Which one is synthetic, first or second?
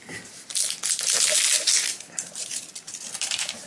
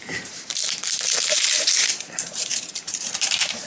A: second